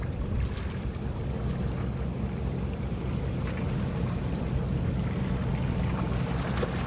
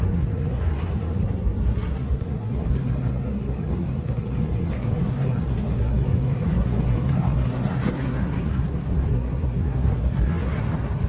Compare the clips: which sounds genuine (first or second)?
first